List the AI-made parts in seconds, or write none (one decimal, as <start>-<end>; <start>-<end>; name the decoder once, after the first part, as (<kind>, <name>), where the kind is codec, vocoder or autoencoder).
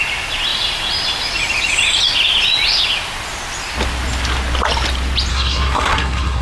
5.3-6.4 (codec, SNAC)